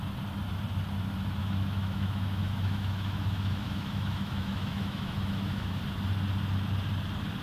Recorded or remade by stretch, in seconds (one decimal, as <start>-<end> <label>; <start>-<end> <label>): 0.0-1.4 recorded; 1.4-5.8 remade; 5.8-7.4 recorded